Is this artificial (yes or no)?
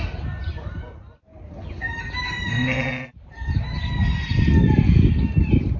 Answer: no